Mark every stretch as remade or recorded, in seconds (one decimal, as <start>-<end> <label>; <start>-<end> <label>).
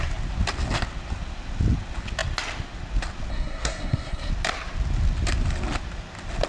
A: 0.0-3.3 recorded; 3.3-4.3 remade; 4.3-6.5 recorded